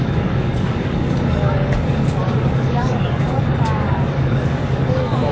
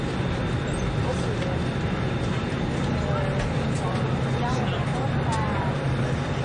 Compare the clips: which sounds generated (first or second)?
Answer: first